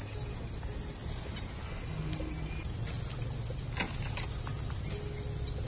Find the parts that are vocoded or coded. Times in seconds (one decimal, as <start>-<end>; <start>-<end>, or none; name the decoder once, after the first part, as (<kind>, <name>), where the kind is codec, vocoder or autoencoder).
none

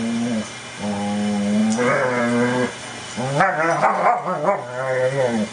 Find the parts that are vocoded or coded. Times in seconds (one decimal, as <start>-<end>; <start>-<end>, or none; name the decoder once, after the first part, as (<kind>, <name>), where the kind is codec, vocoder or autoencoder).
none

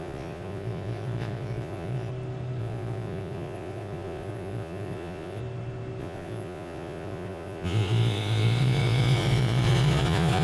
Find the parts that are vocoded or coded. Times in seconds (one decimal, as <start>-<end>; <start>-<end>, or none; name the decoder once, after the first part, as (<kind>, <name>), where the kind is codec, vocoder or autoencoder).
0.0-2.1 (vocoder, Vocos); 2.6-5.4; 6.0-10.4

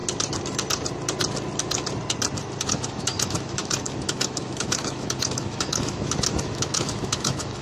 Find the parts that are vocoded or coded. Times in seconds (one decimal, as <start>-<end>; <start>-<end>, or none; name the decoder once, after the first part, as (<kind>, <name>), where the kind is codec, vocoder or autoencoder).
2.7-7.6 (autoencoder, DAC-VAE)